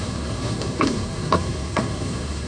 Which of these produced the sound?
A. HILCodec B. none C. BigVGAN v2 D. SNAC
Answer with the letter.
D